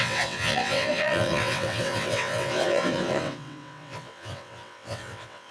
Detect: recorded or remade remade